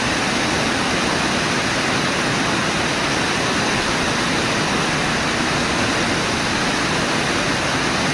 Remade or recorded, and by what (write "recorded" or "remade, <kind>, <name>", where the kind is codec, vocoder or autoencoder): recorded